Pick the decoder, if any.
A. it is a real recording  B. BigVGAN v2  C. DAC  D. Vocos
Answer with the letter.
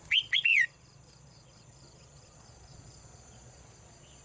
D